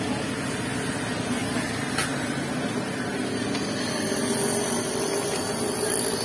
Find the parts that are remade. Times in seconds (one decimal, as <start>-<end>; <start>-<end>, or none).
none